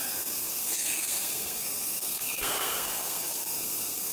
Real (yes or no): no